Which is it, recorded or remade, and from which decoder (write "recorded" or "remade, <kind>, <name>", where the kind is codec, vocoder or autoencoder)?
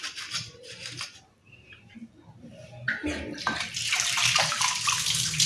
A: remade, vocoder, BigVGAN v2